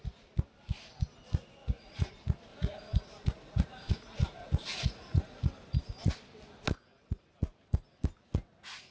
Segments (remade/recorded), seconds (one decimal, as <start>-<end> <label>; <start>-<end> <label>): 0.0-1.6 recorded; 1.6-2.1 remade; 2.1-2.5 recorded; 2.5-5.4 remade; 5.4-8.9 recorded